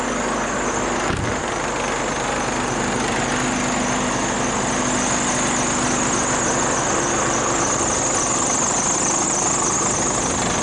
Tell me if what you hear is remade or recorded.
recorded